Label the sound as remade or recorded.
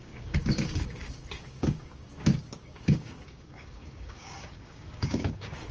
remade